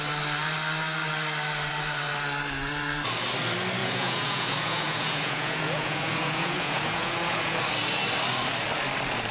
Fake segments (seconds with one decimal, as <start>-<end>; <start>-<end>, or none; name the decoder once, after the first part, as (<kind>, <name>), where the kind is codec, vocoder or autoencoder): 3.8-7.6 (vocoder, Vocos)